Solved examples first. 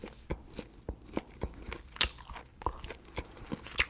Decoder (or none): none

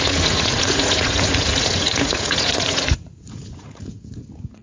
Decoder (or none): vocoder, Vocos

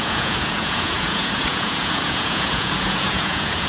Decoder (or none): vocoder, Vocos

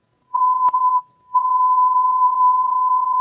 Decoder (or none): vocoder, Vocos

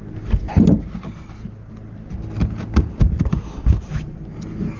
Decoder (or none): none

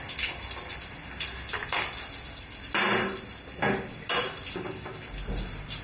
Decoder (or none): none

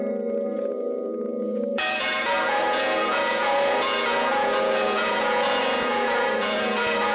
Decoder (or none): vocoder, Vocos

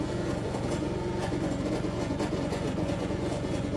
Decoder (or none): vocoder, Vocos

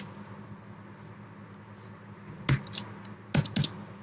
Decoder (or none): none